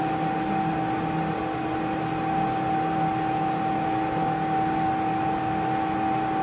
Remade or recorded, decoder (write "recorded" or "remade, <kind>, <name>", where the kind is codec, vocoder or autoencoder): recorded